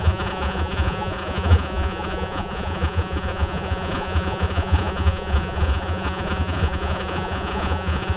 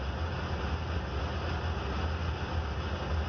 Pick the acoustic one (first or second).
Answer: second